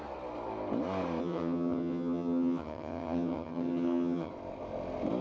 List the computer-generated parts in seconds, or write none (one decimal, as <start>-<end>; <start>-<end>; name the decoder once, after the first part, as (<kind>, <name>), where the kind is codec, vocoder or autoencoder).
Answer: 1.2-4.3 (vocoder, HiFi-GAN)